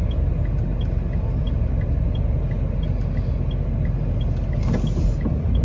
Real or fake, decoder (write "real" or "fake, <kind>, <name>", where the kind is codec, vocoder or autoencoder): real